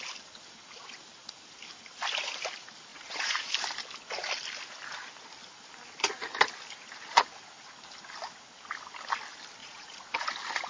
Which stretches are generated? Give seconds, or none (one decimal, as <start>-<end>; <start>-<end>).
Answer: 2.9-3.5; 9.6-10.1